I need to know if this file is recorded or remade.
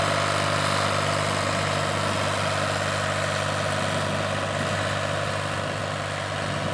recorded